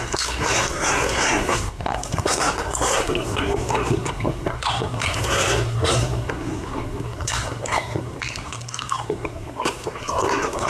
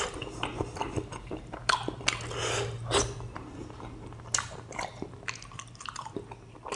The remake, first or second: first